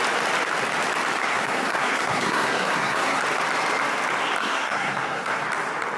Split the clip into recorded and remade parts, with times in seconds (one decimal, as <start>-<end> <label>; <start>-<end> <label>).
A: 0.0-1.2 recorded; 1.2-3.2 remade; 3.2-4.4 recorded; 4.4-5.4 remade; 5.4-6.0 recorded